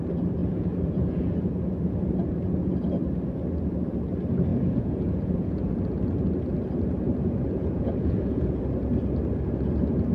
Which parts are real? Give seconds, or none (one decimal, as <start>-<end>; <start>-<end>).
0.0-0.4; 1.4-4.5; 5.7-7.6; 8.6-10.1